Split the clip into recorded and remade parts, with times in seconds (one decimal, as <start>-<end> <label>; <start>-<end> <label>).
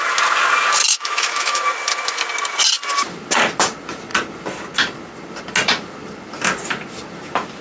0.0-0.9 recorded; 0.9-1.6 remade; 1.6-7.6 recorded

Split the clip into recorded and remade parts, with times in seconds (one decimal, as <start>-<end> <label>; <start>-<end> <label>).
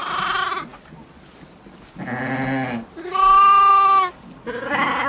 0.0-5.1 recorded